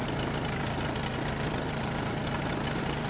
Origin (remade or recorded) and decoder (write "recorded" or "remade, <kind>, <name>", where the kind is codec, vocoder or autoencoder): recorded